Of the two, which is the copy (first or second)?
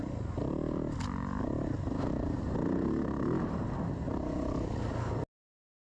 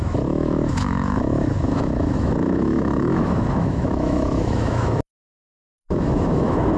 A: second